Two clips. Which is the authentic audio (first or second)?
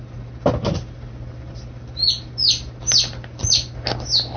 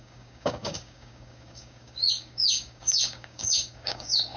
first